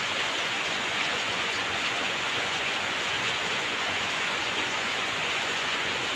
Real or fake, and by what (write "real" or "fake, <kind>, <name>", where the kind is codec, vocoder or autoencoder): fake, vocoder, Vocos